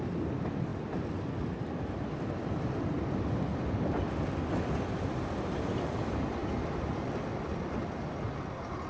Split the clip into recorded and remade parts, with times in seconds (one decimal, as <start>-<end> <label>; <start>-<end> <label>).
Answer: 0.0-0.7 remade; 0.7-1.6 recorded; 1.6-8.9 remade